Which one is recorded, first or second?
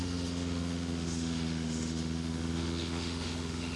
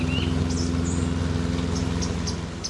second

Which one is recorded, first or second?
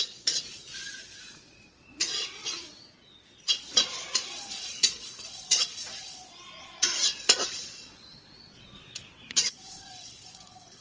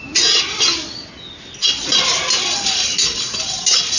second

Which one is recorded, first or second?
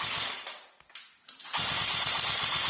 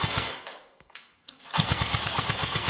first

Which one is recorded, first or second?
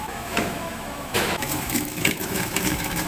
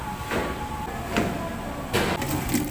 second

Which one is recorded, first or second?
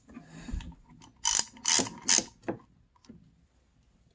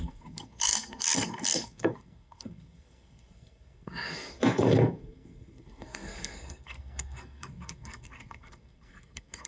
first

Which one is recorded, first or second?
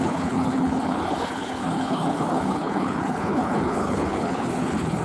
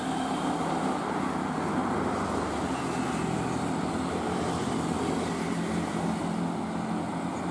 second